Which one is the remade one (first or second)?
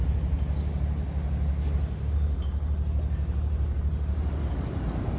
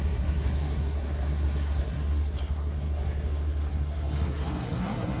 second